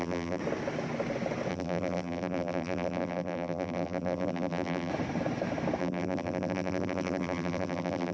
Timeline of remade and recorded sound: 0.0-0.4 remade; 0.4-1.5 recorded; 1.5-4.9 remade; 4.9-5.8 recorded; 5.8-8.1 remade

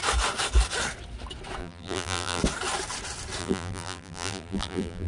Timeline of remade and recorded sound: 0.0-1.6 recorded; 1.6-2.4 remade; 2.4-3.4 recorded; 3.4-5.1 remade